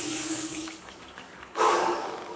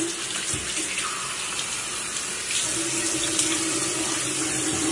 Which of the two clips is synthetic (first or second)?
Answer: first